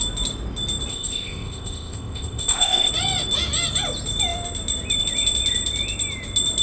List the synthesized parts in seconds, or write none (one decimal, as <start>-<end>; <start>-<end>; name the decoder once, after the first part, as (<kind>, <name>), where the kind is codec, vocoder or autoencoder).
0.9-2.9 (codec, ZipCodec)